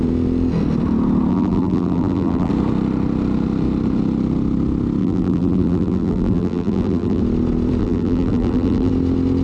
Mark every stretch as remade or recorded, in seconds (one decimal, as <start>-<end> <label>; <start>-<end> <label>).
0.0-1.3 recorded; 1.3-2.5 remade; 2.5-5.0 recorded; 5.0-7.2 remade; 7.2-7.8 recorded; 7.8-8.9 remade; 8.9-9.4 recorded